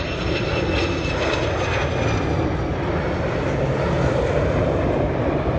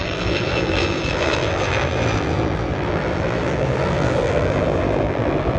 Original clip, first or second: first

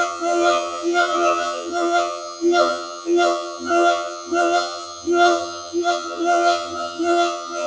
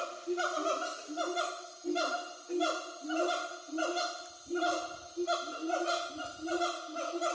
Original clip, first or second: second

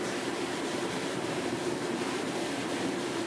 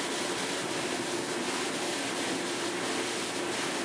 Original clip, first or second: second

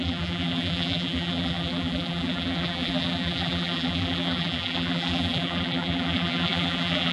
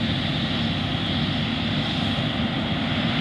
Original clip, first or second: second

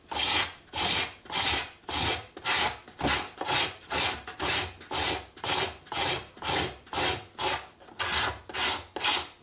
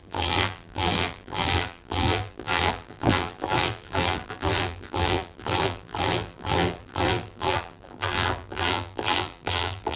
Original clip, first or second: first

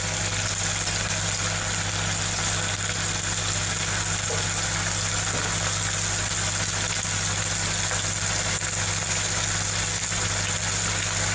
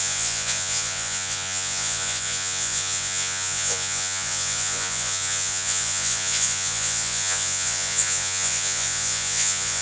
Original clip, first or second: first